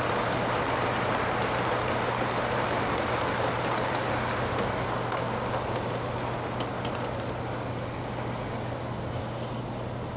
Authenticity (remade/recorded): recorded